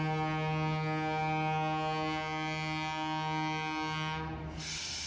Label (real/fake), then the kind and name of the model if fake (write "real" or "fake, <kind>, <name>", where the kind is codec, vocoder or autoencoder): real